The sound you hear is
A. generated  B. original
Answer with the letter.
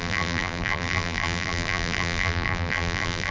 A